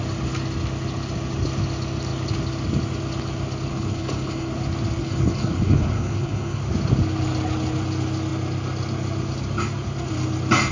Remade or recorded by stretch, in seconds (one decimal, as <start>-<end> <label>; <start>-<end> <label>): 0.0-3.7 recorded; 3.7-4.5 remade; 4.5-5.0 recorded; 5.0-6.6 remade; 6.6-10.7 recorded